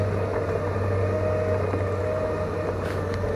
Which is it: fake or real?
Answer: real